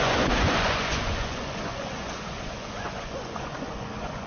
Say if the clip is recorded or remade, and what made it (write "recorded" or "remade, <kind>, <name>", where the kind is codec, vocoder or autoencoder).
remade, vocoder, Vocos